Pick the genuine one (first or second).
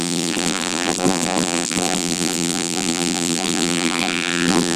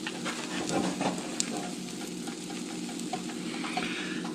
second